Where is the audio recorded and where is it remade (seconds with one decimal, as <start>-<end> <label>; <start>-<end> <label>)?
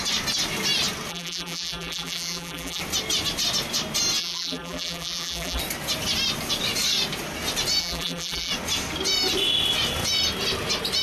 0.0-1.1 recorded; 1.1-2.8 remade; 2.8-4.2 recorded; 4.2-5.6 remade; 5.6-7.8 recorded; 7.8-8.5 remade; 8.5-11.0 recorded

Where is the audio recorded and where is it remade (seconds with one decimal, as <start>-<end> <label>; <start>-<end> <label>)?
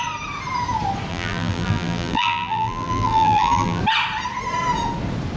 0.0-1.1 recorded; 1.1-3.8 remade; 3.8-5.4 recorded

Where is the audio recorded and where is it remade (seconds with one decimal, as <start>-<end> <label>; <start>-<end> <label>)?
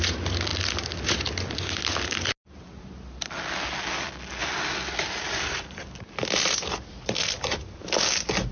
0.0-4.4 recorded; 4.4-8.5 remade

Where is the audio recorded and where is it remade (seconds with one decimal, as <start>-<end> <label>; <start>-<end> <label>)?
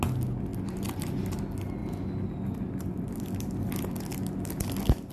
0.0-0.5 recorded; 0.5-1.4 remade; 1.4-1.8 recorded; 1.8-3.9 remade; 3.9-5.1 recorded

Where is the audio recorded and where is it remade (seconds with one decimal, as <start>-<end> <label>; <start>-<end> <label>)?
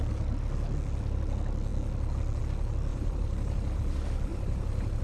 0.0-2.9 recorded; 2.9-3.8 remade; 3.8-4.3 recorded; 4.3-5.0 remade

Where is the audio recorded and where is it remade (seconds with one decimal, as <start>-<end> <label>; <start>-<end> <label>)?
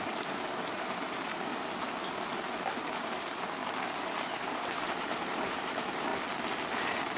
0.0-1.5 remade; 1.5-2.9 recorded; 2.9-3.6 remade; 3.6-4.2 recorded; 4.2-6.1 remade; 6.1-6.7 recorded; 6.7-7.2 remade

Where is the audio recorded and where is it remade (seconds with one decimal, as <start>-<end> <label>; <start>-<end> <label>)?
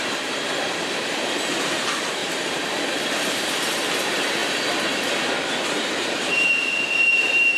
0.0-2.2 remade; 2.2-2.9 recorded; 2.9-4.4 remade; 4.4-5.4 recorded; 5.4-7.6 remade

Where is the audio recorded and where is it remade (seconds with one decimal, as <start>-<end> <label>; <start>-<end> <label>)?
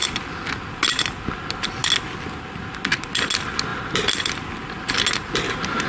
0.0-5.9 recorded